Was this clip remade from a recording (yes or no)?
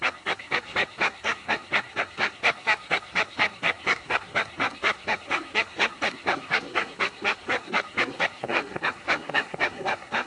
yes